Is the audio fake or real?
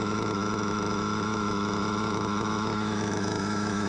fake